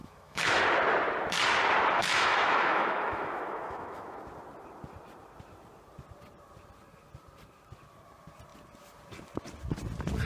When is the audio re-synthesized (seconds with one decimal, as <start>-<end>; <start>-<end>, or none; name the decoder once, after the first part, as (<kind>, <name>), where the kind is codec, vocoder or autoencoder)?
0.0-0.6 (autoencoder, DAC-VAE); 2.0-4.2